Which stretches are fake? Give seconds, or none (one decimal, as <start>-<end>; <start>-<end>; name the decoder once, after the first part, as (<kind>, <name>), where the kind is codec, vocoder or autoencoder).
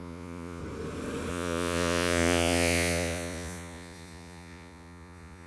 0.0-0.6 (vocoder, Vocos); 1.3-5.5